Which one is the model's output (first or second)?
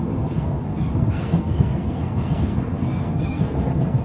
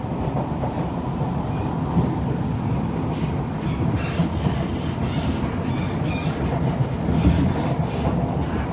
first